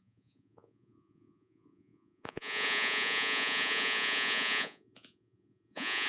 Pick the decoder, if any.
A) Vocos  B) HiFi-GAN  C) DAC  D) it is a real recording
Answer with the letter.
A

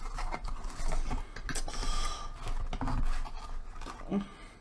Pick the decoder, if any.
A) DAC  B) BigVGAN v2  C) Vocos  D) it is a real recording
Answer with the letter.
D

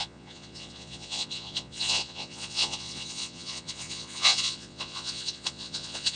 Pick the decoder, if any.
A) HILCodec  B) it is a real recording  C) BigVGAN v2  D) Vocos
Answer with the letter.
D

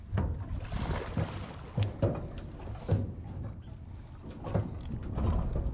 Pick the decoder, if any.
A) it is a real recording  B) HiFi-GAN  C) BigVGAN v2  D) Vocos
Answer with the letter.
A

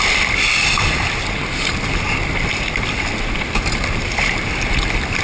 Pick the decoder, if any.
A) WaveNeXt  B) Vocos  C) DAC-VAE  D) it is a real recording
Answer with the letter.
D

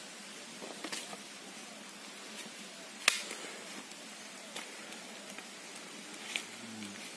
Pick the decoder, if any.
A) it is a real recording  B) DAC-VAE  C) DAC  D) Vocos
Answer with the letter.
A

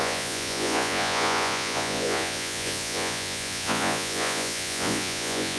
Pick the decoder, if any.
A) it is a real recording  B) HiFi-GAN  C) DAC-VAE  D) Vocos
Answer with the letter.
D